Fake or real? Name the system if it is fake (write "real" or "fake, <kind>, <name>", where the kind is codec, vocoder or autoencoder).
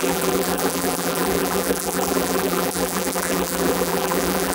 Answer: fake, vocoder, BigVGAN v2